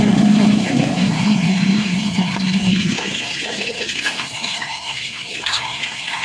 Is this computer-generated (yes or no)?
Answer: yes